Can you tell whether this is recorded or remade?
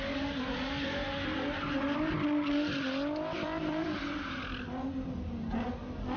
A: recorded